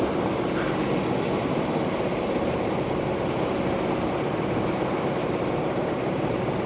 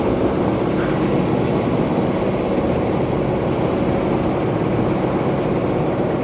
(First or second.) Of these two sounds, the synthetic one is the first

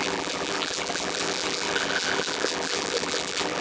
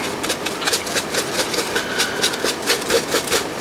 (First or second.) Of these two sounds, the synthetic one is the first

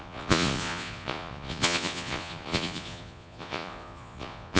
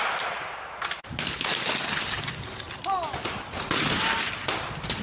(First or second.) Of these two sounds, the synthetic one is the first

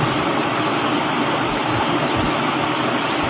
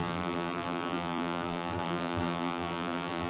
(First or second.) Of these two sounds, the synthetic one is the second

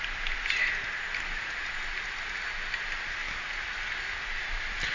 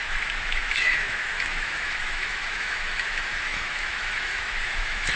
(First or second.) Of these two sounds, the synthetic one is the second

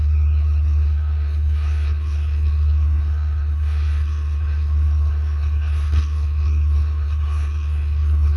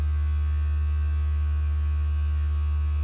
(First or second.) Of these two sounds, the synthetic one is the first